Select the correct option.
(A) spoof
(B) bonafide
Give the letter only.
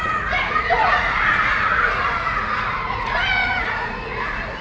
A